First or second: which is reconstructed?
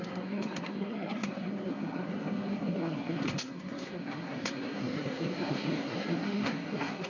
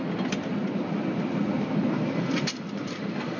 first